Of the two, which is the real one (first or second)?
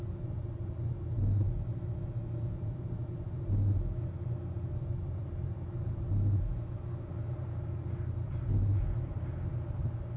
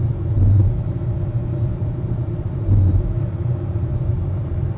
first